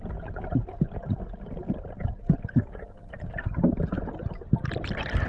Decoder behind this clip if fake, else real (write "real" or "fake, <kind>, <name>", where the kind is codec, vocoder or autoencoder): real